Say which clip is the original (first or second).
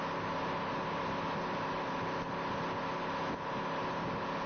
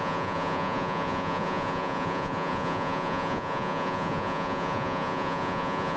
first